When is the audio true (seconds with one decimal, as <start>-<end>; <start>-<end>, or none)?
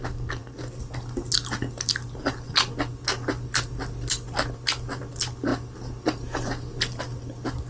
0.0-7.7